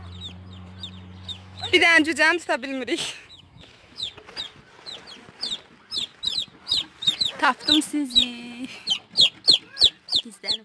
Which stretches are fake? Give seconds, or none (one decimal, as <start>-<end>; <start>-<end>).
1.3-4.0